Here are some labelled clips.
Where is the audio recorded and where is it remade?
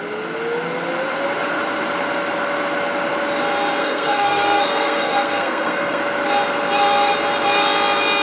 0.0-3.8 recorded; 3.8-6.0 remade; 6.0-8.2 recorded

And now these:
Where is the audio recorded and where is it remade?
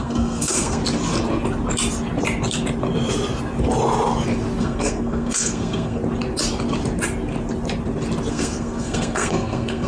0.0-0.8 remade; 0.8-4.6 recorded; 4.6-6.0 remade; 6.0-8.3 recorded; 8.3-9.9 remade